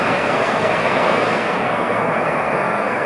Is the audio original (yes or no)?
no